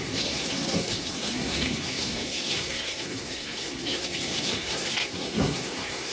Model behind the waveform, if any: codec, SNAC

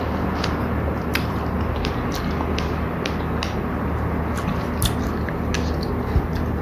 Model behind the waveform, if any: none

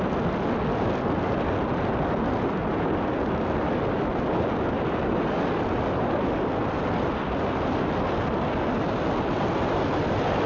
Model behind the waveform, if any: none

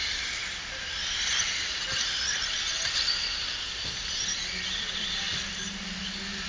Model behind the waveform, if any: none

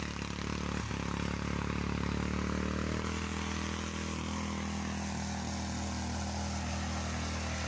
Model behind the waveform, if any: none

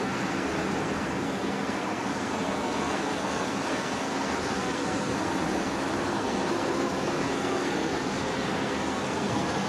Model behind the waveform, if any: codec, SNAC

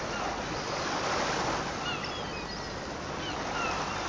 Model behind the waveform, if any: none